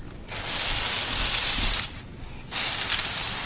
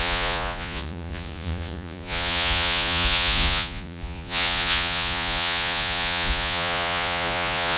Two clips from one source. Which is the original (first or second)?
first